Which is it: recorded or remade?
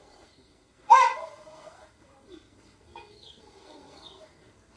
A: remade